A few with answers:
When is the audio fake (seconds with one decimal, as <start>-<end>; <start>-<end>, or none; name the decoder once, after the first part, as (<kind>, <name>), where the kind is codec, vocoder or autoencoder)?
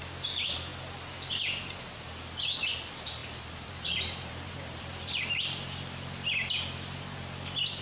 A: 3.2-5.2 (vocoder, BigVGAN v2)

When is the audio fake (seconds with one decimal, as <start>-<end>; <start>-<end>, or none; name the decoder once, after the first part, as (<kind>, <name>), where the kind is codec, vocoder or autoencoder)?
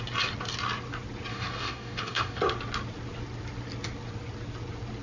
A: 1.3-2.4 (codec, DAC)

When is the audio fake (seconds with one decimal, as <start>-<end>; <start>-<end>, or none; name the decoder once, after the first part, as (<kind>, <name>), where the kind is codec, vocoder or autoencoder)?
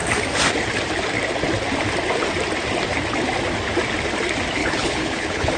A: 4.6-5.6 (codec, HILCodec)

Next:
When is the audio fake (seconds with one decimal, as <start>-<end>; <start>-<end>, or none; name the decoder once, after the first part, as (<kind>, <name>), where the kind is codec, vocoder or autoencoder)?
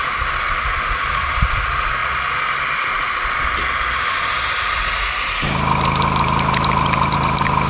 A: 0.0-2.0 (vocoder, BigVGAN v2); 3.9-7.7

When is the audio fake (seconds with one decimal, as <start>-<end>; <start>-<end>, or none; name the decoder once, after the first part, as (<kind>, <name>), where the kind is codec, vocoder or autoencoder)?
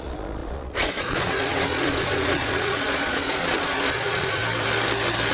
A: 0.0-4.4 (vocoder, Vocos)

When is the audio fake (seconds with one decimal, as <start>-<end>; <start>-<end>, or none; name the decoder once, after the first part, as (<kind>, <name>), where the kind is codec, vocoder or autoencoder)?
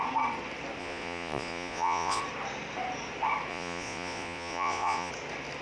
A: 0.8-2.2 (vocoder, Vocos); 3.5-5.1